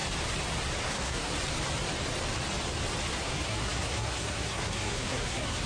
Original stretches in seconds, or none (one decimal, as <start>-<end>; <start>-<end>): 0.0-0.8; 1.3-3.1